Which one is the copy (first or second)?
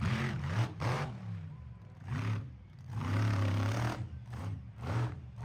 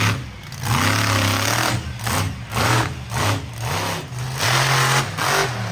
first